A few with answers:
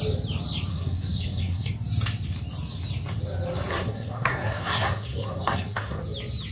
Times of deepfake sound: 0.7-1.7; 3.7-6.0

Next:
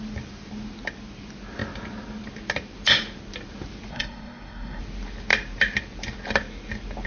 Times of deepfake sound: 3.9-4.8

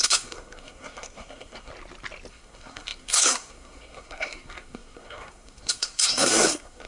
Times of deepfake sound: 0.0-1.7; 2.3-6.9

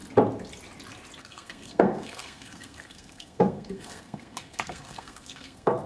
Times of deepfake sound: 1.2-5.9

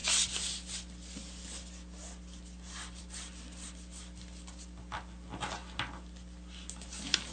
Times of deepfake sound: none